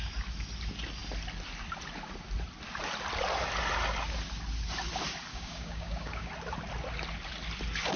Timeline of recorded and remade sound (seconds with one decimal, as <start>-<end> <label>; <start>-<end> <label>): 0.0-5.3 recorded; 5.3-6.3 remade; 6.3-8.0 recorded